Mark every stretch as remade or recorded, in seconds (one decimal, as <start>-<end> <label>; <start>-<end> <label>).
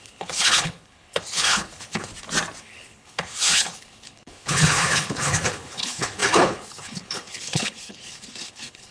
0.0-2.1 remade; 2.1-2.6 recorded; 2.6-8.9 remade